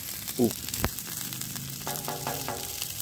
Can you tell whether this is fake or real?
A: fake